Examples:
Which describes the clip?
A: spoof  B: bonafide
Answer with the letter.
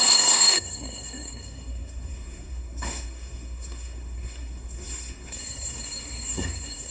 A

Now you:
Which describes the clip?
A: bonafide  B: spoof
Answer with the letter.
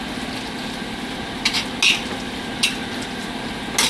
A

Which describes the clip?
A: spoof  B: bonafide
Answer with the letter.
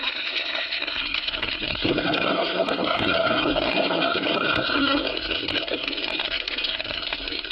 A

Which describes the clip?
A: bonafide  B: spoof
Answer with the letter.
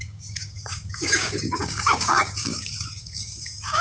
B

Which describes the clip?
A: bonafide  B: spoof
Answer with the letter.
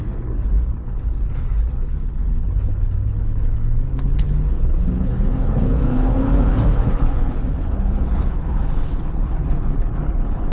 B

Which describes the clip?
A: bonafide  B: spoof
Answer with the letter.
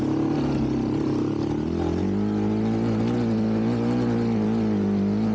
A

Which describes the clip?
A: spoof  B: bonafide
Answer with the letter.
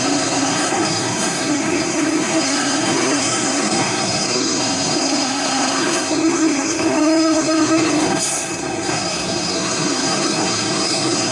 A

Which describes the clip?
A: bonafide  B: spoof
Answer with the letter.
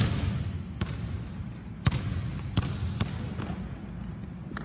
A